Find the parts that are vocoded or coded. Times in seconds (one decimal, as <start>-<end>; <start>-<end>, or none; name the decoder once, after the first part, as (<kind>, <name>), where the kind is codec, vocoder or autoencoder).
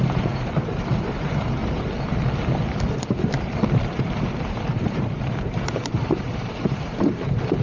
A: 0.0-1.6 (vocoder, BigVGAN v2); 3.1-7.6